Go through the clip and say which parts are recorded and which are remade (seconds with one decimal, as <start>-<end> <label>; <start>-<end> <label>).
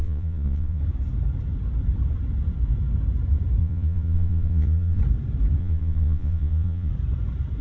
0.0-0.8 remade; 0.8-3.6 recorded; 3.6-5.0 remade; 5.0-5.6 recorded; 5.6-6.9 remade; 6.9-7.6 recorded